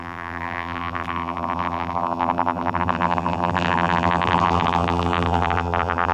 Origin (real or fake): fake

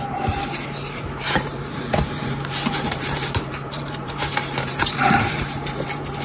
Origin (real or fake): fake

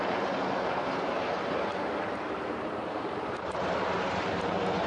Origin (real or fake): fake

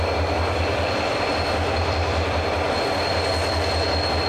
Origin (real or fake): real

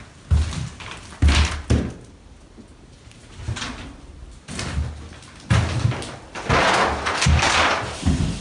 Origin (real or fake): real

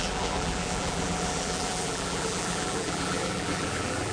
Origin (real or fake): fake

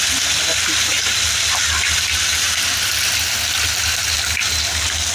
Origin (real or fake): real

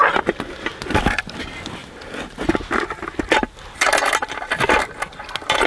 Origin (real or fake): real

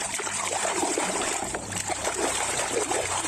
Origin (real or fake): fake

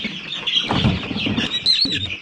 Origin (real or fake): real